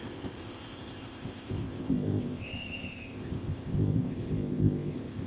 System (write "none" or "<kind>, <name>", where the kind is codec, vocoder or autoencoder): codec, ZipCodec